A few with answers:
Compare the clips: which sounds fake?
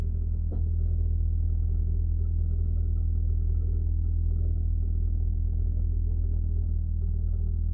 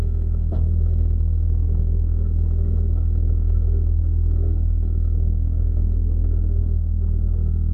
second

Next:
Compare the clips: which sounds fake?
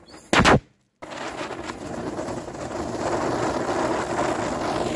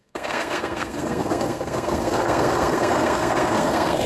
second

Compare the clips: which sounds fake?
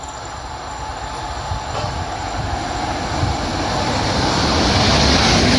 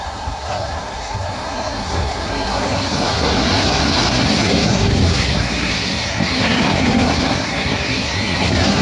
second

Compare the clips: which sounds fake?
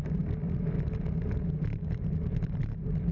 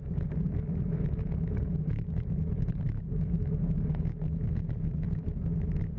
second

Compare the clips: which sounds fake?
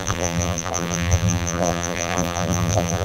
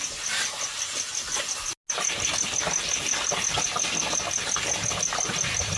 first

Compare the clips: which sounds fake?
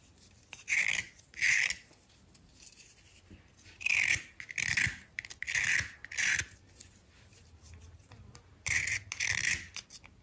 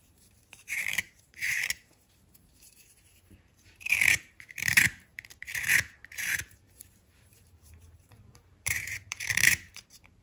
second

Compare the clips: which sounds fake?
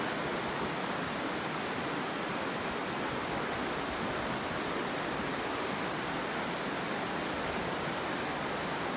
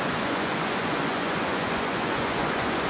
second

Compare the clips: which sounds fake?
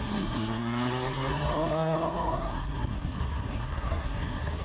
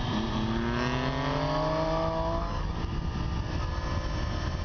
first